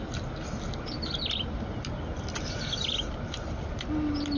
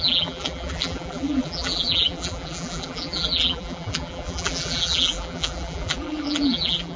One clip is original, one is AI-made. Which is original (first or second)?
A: first